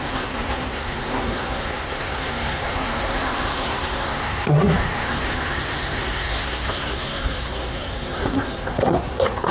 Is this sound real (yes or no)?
no